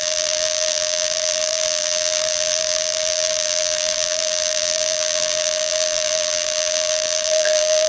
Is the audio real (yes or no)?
no